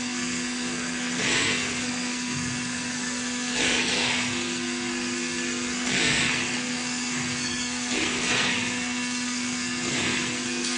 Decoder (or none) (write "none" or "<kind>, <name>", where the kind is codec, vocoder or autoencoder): codec, SNAC